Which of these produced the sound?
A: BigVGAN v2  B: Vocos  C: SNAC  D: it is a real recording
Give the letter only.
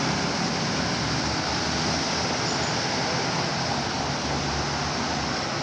D